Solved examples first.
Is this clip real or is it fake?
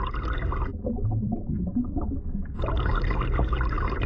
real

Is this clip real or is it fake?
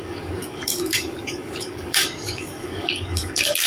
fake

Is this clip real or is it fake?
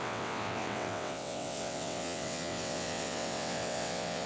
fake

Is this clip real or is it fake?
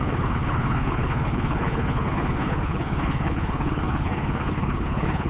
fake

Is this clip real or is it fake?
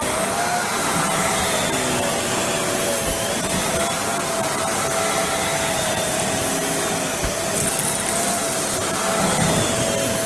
real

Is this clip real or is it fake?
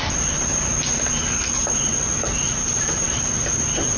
fake